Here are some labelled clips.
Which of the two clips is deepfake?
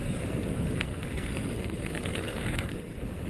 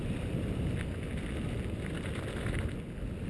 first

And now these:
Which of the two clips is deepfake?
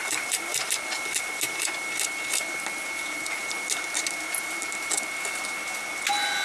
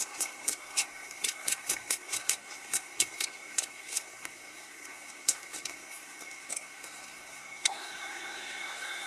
second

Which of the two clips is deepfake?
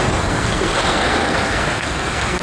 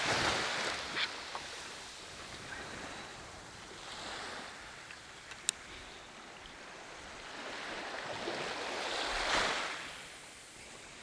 first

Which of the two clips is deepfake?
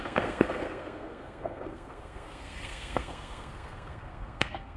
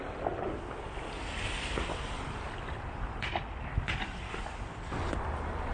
first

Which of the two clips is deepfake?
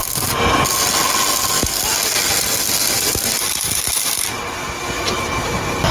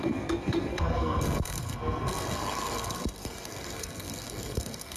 second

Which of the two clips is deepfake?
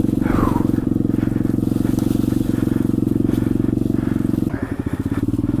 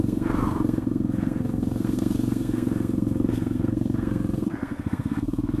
second